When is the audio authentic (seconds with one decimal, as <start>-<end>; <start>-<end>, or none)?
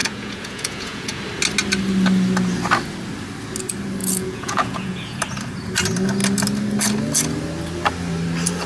1.2-4.0; 5.2-8.7